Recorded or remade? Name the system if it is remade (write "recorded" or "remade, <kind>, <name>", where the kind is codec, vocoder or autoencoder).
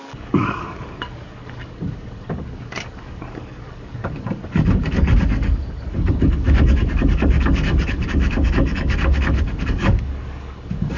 remade, codec, DAC